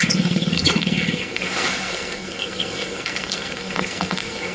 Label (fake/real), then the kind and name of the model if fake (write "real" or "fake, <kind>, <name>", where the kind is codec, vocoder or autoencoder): fake, codec, SNAC